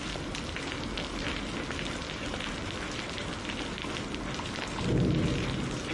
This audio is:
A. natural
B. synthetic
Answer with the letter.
A